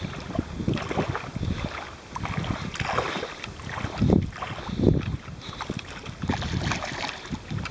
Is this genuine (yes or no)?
yes